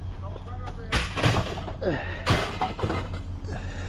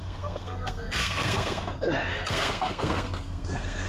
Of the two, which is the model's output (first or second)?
second